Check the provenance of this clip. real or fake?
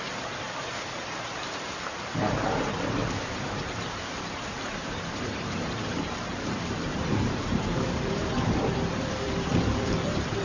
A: fake